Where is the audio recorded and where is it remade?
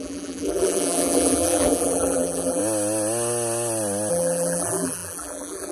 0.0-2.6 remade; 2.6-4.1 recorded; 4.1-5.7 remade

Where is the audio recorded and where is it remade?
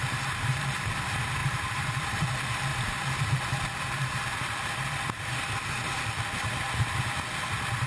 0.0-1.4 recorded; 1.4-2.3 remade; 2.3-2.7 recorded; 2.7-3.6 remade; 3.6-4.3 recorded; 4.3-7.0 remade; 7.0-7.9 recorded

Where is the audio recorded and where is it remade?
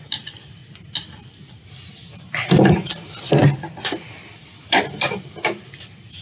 0.0-6.2 remade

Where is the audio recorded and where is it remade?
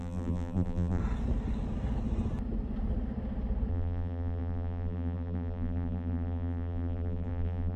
0.0-1.0 remade; 1.0-3.7 recorded; 3.7-7.8 remade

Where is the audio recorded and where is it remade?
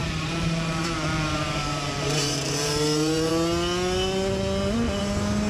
0.0-3.3 remade; 3.3-5.5 recorded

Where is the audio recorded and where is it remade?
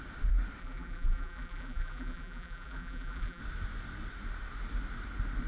0.0-0.6 recorded; 0.6-3.4 remade; 3.4-5.5 recorded